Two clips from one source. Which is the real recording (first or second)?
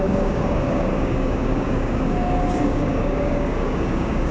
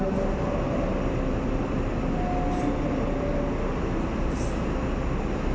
second